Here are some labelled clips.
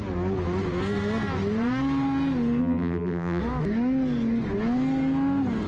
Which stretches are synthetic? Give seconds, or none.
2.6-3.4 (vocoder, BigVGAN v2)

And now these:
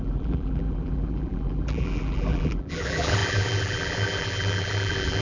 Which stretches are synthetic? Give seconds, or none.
0.0-5.2 (vocoder, BigVGAN v2)

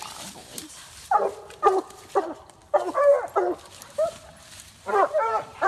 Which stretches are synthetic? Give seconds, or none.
0.0-2.6 (vocoder, BigVGAN v2); 4.5-5.7

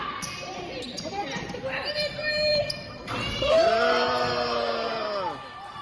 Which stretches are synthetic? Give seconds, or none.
0.9-1.8 (vocoder, BigVGAN v2); 2.5-3.7

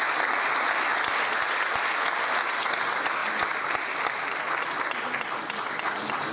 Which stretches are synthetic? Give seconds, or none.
none

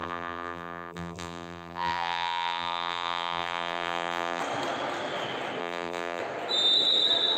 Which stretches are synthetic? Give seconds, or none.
0.0-4.4 (vocoder, BigVGAN v2); 5.6-6.2

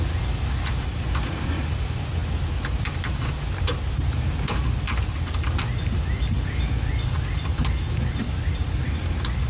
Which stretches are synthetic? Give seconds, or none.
none